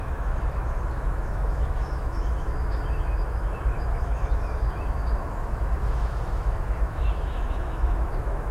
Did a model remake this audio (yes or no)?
yes